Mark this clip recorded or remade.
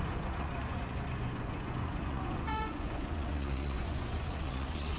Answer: remade